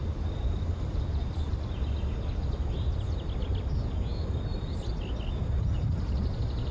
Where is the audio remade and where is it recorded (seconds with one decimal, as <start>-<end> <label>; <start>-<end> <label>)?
0.0-6.7 recorded